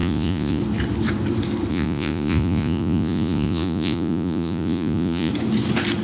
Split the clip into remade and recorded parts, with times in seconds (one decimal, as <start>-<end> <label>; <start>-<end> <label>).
0.0-0.6 remade; 0.6-1.7 recorded; 1.7-5.3 remade; 5.3-6.0 recorded